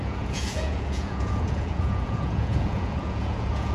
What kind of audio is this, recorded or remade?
remade